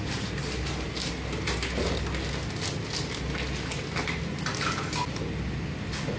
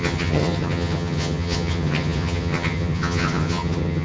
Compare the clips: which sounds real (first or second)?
first